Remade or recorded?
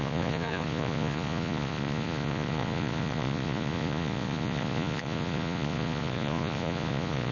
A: remade